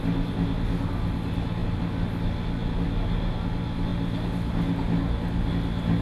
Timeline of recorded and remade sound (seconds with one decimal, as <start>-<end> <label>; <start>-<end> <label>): 0.0-6.0 recorded